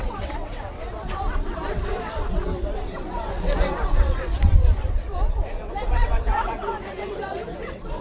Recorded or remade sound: remade